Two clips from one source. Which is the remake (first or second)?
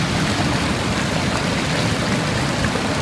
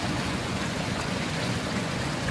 second